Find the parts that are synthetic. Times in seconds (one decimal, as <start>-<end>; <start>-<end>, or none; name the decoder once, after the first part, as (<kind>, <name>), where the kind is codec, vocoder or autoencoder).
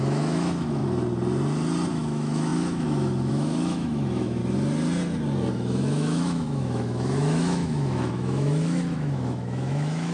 0.0-0.8 (autoencoder, DAC-VAE); 1.9-4.4; 5.5-10.1